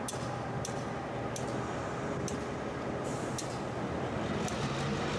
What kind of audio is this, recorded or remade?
recorded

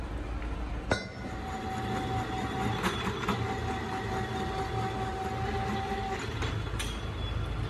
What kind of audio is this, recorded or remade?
recorded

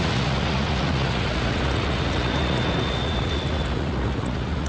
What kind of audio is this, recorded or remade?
remade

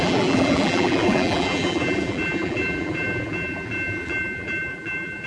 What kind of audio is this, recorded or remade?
remade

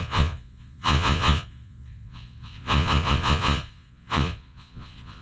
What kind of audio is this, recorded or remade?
remade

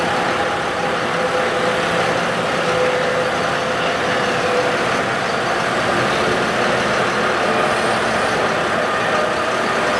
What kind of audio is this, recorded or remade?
recorded